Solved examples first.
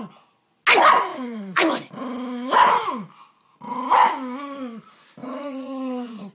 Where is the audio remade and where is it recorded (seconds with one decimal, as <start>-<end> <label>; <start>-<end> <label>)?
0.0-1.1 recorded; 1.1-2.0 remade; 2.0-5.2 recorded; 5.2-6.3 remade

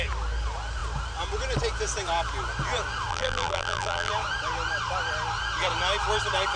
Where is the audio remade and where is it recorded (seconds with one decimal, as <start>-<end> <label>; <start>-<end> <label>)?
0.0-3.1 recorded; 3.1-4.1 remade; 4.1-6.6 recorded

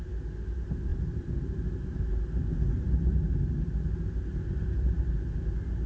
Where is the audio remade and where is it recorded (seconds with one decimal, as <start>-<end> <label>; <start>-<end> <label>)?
0.0-0.9 recorded; 0.9-1.6 remade; 1.6-5.9 recorded

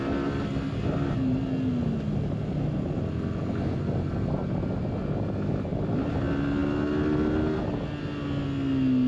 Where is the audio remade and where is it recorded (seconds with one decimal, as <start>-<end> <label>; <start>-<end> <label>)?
0.0-9.1 recorded

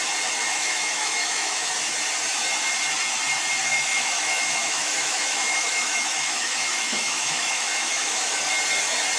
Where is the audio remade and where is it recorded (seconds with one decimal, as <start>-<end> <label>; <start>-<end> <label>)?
0.0-0.5 recorded; 0.5-1.7 remade; 1.7-3.7 recorded; 3.7-8.4 remade; 8.4-9.2 recorded

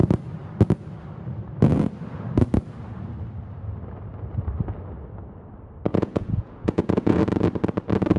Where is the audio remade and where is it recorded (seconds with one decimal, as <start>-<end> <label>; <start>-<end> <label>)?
0.0-5.9 recorded; 5.9-7.2 remade; 7.2-8.2 recorded

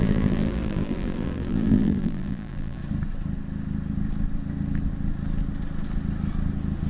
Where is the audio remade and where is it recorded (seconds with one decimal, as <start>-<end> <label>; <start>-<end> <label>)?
0.0-2.8 remade; 2.8-6.9 recorded

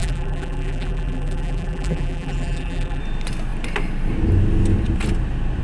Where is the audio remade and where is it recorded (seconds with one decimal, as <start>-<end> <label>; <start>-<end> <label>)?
0.0-3.0 remade; 3.0-5.6 recorded